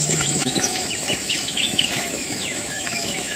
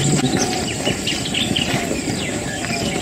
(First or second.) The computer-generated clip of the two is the first